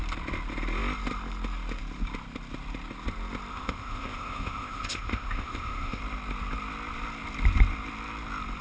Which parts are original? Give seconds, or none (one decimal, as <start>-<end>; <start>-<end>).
0.0-3.5; 6.0-8.6